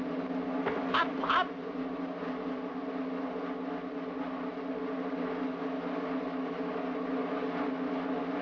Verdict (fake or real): real